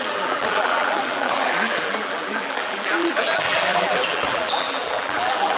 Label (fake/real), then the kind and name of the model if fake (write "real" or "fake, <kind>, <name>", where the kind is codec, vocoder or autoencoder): fake, vocoder, BigVGAN v2